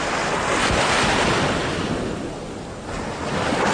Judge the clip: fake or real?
real